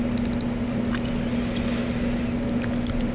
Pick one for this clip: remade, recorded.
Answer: recorded